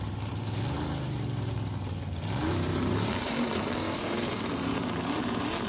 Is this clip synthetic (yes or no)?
yes